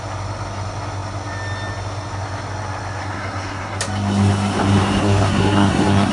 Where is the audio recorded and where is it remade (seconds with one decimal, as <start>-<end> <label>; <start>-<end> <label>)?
0.0-3.0 recorded; 3.0-3.8 remade; 3.8-5.0 recorded; 5.0-6.1 remade